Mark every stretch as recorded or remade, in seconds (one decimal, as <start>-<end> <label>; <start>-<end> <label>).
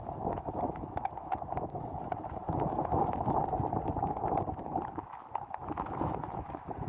0.0-3.4 remade; 3.4-4.9 recorded; 4.9-6.9 remade